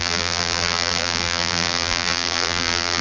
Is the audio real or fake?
fake